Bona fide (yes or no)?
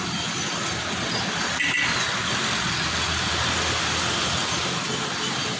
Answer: yes